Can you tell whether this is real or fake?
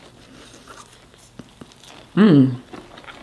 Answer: real